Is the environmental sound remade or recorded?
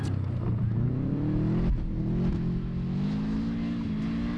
recorded